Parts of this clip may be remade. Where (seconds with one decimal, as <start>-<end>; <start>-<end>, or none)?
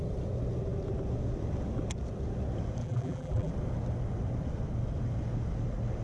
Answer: 2.8-3.5